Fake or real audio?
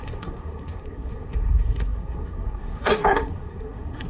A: fake